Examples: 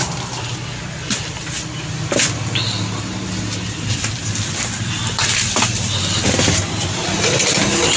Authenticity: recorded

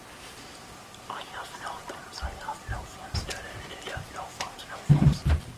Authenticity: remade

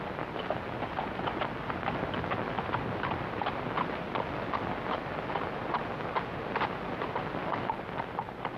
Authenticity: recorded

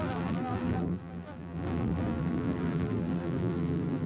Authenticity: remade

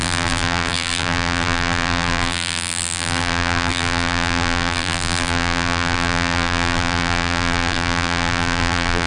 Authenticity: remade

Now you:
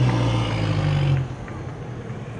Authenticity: recorded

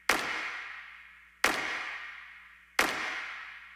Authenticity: recorded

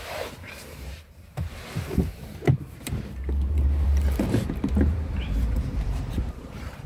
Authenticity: remade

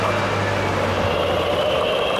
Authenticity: recorded